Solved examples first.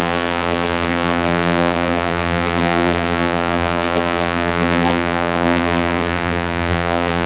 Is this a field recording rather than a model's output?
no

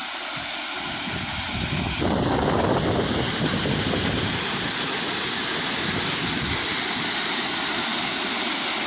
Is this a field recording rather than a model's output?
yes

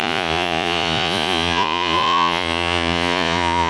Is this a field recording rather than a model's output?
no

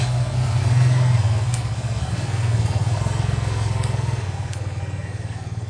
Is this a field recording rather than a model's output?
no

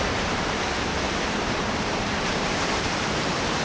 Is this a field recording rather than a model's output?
no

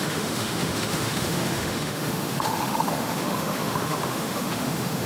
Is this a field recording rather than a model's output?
no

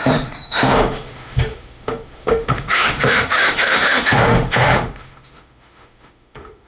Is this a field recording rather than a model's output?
no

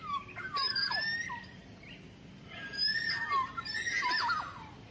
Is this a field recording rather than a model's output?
yes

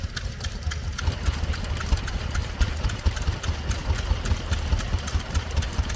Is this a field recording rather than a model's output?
yes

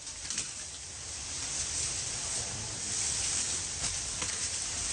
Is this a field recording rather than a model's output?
yes